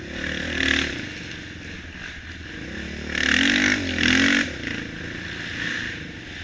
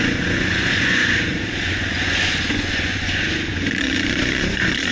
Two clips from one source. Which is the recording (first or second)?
first